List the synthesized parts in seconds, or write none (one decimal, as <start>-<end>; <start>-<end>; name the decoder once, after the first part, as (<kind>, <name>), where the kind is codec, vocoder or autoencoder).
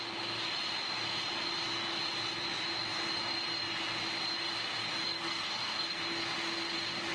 5.0-6.0 (codec, SNAC)